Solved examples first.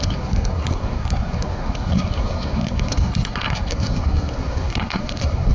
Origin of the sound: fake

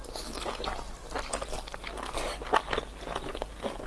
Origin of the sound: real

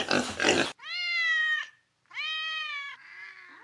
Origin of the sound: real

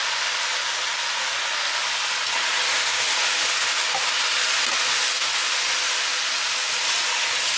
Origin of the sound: real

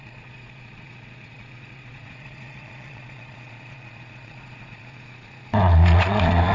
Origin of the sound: fake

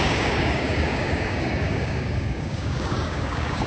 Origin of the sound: fake